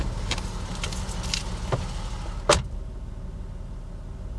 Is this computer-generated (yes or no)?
no